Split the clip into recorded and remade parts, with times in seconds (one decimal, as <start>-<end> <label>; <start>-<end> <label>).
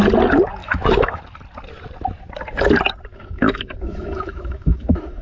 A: 0.0-0.6 recorded; 0.6-1.2 remade; 1.2-3.1 recorded; 3.1-5.2 remade